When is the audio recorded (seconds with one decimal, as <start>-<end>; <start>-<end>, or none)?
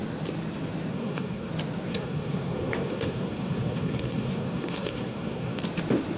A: 0.0-0.9; 1.5-1.9; 5.6-6.2